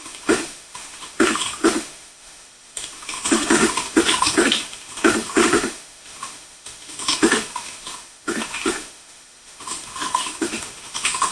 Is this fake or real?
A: fake